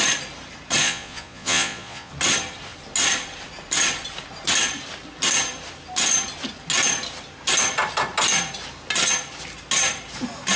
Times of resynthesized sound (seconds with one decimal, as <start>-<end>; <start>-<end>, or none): 0.8-2.1